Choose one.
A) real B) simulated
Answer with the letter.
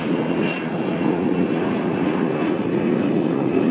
B